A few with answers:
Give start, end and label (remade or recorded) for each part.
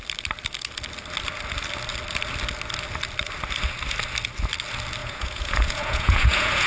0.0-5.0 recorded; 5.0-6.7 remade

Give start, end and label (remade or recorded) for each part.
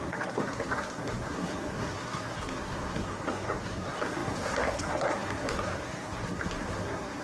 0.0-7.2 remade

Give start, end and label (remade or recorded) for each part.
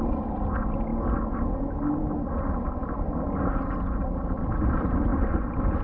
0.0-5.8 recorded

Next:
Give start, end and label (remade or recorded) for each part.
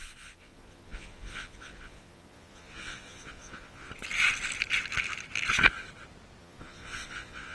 0.0-3.9 remade; 3.9-6.4 recorded; 6.4-7.5 remade